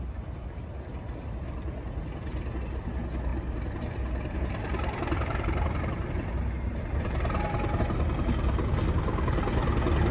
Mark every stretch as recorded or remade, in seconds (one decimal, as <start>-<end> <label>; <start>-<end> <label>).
0.0-3.3 recorded; 3.3-7.8 remade; 7.8-10.1 recorded